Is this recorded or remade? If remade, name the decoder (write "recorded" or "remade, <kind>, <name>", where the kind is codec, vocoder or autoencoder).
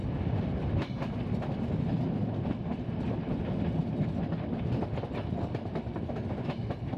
recorded